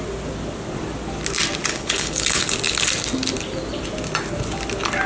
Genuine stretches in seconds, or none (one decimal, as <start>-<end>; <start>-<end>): 0.0-1.7; 2.4-5.1